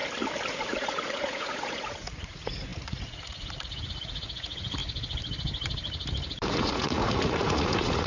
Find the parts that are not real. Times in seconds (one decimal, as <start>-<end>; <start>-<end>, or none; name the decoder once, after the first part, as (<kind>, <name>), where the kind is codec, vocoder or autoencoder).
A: 0.5-4.8 (vocoder, Vocos); 6.5-8.1